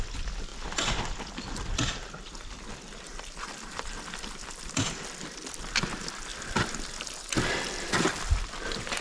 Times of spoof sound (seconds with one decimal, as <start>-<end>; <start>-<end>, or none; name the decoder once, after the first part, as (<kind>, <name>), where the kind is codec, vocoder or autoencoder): 0.5-5.7 (vocoder, BigVGAN v2); 6.3-8.1